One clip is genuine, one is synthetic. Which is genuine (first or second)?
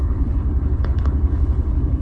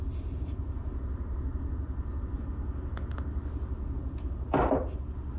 second